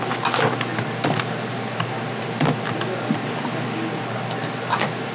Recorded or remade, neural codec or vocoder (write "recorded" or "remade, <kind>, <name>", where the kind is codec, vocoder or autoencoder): recorded